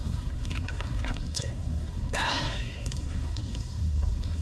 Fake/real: fake